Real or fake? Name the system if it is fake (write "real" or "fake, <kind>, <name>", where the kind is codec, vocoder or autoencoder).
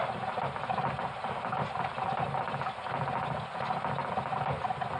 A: real